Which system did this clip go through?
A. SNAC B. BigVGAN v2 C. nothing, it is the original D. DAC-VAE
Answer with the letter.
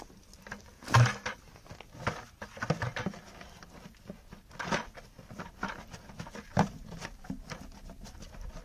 C